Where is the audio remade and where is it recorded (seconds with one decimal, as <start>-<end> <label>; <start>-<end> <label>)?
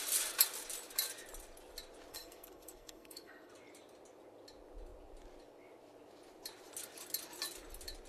0.0-2.1 recorded; 2.1-3.5 remade; 3.5-8.1 recorded